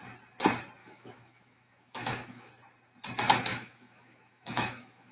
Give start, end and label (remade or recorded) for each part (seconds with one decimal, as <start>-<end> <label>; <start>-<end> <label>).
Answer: 0.0-0.8 recorded; 0.8-2.5 remade; 2.5-3.5 recorded; 3.5-5.1 remade